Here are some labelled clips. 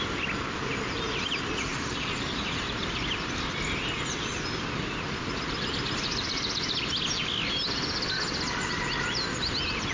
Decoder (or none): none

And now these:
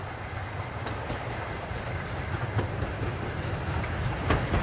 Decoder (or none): none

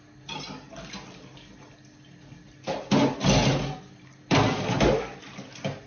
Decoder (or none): none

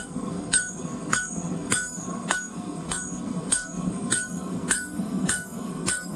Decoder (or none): codec, SNAC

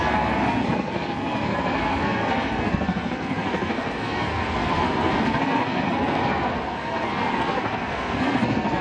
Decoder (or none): codec, SNAC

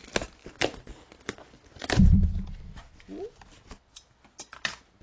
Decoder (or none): none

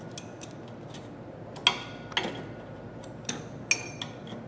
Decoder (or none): none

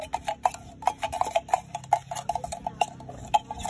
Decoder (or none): none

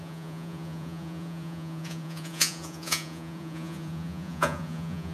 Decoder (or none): vocoder, Vocos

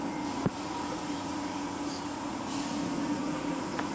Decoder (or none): vocoder, Vocos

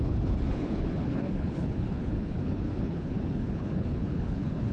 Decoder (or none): codec, HILCodec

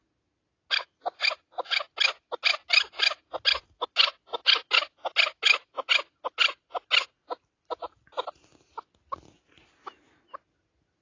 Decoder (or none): none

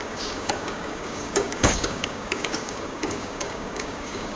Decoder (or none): codec, DAC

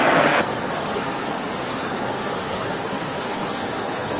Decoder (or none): codec, SNAC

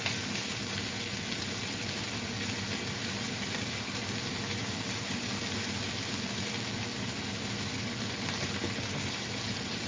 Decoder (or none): none